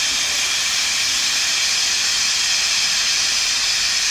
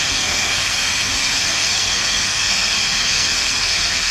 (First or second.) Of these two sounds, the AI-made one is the second